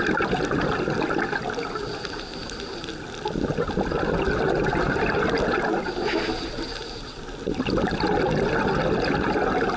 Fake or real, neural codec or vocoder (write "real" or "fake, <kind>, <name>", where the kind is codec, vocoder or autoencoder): real